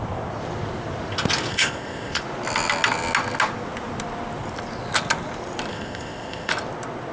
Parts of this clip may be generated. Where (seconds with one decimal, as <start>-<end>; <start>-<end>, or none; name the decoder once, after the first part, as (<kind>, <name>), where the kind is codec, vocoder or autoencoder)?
1.5-2.2 (codec, ZipCodec); 5.7-6.5